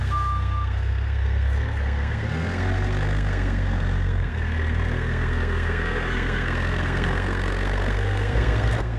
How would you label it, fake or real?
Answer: fake